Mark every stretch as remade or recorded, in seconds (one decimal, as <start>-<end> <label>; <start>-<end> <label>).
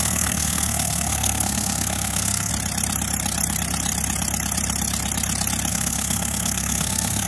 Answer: 0.0-2.5 remade; 2.5-5.7 recorded; 5.7-7.3 remade